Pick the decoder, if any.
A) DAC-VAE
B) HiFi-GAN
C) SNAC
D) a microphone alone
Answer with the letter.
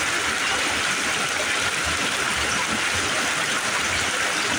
D